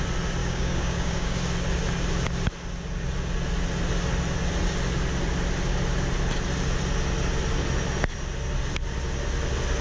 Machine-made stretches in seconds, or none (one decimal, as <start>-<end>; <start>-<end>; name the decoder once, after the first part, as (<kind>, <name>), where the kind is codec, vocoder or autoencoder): 0.4-1.4 (codec, DAC)